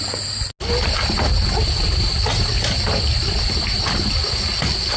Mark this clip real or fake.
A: real